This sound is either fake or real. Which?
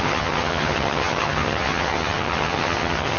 fake